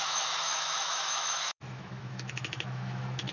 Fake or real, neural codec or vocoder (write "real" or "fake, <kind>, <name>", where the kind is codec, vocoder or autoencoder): fake, autoencoder, DAC-VAE